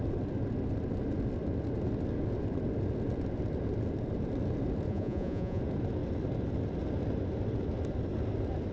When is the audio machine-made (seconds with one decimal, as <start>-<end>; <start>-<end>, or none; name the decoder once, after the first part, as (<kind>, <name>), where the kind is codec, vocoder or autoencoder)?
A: 4.9-5.6 (vocoder, Vocos)